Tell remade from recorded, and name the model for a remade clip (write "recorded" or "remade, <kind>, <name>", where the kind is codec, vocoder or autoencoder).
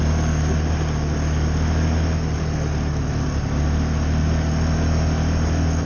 recorded